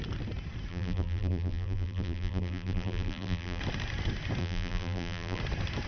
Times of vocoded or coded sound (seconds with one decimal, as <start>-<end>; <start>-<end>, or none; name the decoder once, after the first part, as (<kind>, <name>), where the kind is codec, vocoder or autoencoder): 0.7-3.6 (vocoder, BigVGAN v2); 4.4-5.4